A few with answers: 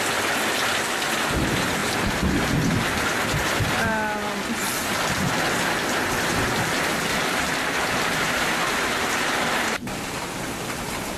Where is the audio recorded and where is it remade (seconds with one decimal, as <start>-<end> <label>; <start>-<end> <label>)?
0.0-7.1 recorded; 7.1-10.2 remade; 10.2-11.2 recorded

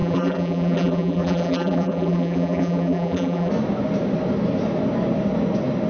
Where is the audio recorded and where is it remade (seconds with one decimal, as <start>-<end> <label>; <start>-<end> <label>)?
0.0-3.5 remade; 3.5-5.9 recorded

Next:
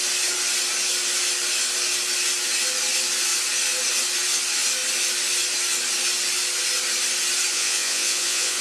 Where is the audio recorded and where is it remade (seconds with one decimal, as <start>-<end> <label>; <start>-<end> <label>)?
0.0-7.5 recorded; 7.5-8.6 remade

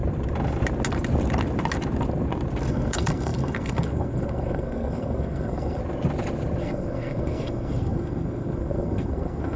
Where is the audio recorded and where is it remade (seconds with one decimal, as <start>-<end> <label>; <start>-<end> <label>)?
0.0-2.7 recorded; 2.7-5.8 remade; 5.8-6.6 recorded; 6.6-9.6 remade

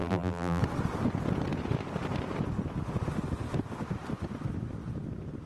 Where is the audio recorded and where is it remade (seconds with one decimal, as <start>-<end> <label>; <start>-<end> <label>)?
0.0-0.6 remade; 0.6-5.5 recorded

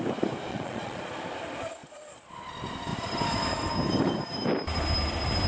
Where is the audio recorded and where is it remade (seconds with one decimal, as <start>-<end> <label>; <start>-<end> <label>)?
0.0-0.5 recorded; 0.5-1.1 remade; 1.1-1.8 recorded; 1.8-2.3 remade; 2.3-5.5 recorded

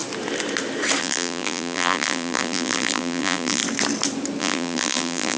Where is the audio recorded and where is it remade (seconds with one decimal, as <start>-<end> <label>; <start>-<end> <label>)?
0.0-1.0 recorded; 1.0-3.6 remade; 3.6-4.4 recorded; 4.4-5.4 remade

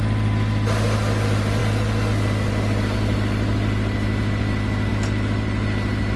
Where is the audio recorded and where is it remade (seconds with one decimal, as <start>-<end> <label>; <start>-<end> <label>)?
0.0-6.2 recorded